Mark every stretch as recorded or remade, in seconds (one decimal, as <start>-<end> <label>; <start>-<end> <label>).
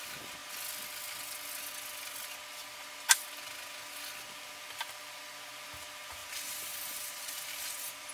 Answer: 0.0-6.2 recorded; 6.2-8.1 remade